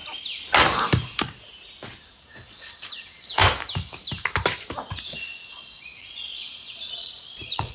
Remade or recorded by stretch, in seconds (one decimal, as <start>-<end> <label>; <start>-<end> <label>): 0.0-2.1 recorded; 2.1-3.4 remade; 3.4-5.0 recorded; 5.0-7.7 remade